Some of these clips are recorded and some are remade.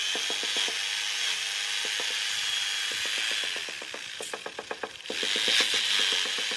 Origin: recorded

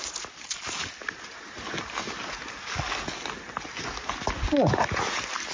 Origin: recorded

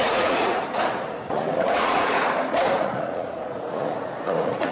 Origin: remade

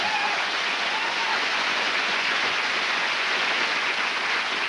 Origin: remade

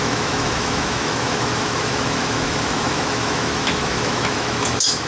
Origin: remade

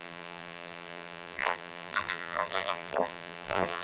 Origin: remade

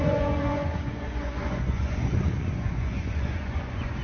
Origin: remade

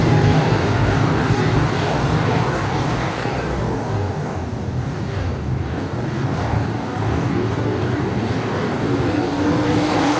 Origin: remade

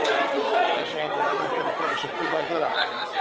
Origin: remade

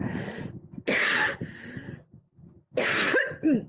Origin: recorded